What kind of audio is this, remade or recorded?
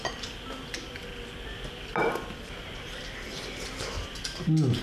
recorded